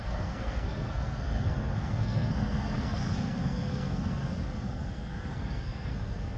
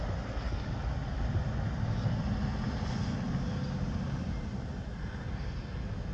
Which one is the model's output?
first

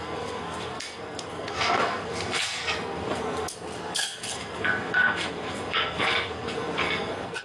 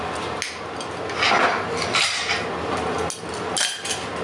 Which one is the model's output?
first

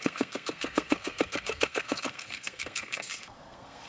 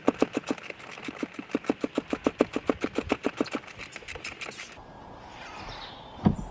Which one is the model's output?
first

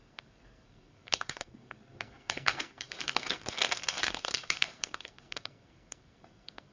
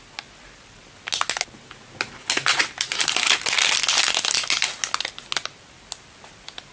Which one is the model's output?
first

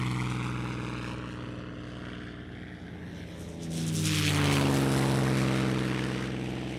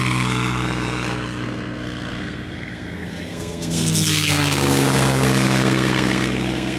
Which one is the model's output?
second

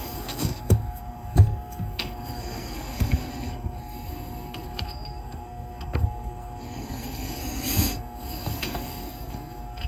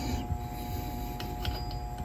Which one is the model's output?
first